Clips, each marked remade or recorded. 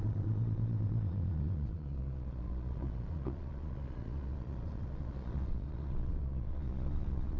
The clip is remade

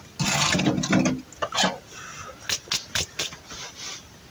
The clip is recorded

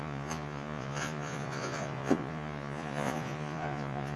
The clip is remade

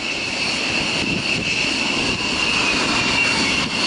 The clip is recorded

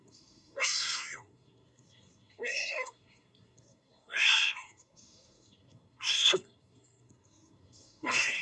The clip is remade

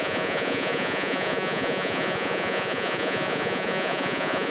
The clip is remade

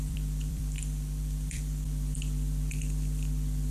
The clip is remade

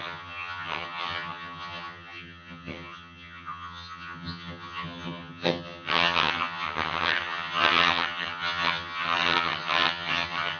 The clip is remade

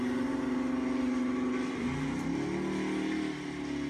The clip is recorded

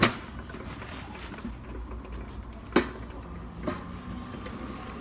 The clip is recorded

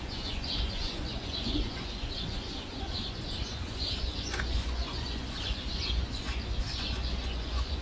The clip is remade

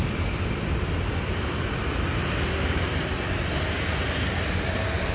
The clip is recorded